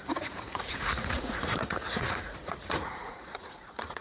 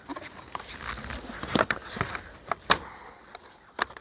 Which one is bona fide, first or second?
second